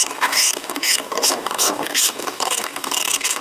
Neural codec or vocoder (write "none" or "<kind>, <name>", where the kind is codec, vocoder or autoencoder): codec, DAC